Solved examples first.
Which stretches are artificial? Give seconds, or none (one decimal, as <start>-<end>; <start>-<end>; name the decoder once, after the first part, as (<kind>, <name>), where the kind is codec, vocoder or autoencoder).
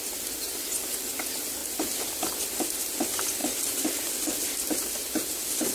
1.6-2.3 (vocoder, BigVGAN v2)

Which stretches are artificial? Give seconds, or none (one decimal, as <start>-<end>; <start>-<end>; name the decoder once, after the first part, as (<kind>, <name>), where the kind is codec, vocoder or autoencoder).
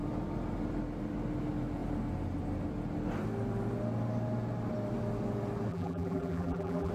5.7-6.9 (vocoder, BigVGAN v2)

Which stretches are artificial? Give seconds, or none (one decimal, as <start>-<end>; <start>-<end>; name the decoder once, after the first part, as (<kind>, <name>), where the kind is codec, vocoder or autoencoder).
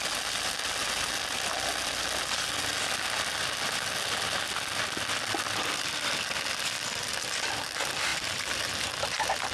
none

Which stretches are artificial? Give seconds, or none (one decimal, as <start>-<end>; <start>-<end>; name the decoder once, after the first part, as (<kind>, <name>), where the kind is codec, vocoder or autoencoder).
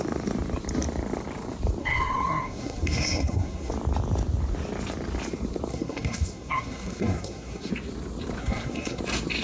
1.8-3.7 (codec, SNAC); 5.7-7.7; 8.4-9.0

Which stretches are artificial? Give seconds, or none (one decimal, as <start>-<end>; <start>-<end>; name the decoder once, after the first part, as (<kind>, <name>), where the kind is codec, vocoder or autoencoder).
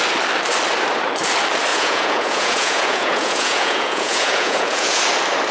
1.7-5.0 (vocoder, Vocos)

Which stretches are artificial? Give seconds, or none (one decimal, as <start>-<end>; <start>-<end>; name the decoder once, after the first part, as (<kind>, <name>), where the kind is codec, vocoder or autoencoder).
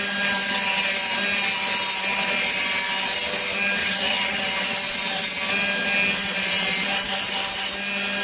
3.8-4.4 (vocoder, HiFi-GAN)